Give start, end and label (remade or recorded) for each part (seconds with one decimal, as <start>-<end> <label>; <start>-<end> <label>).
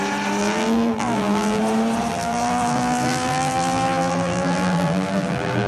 0.0-0.4 recorded; 0.4-1.6 remade; 1.6-2.1 recorded; 2.1-5.7 remade